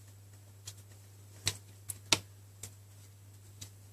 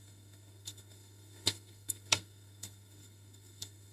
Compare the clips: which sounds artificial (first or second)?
second